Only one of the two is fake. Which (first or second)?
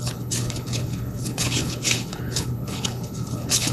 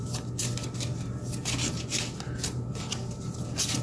first